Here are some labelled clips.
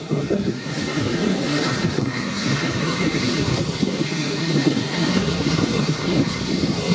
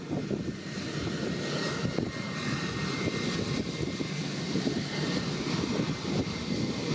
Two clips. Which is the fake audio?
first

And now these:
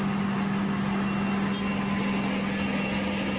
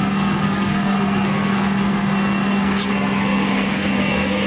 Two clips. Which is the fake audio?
second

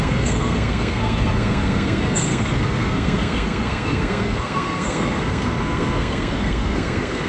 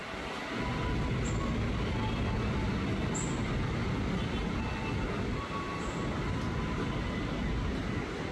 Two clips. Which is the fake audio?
first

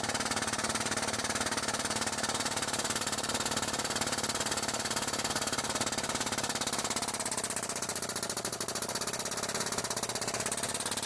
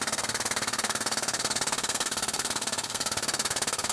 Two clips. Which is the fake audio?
second